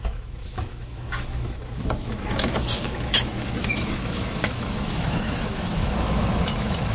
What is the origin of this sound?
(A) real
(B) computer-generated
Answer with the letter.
B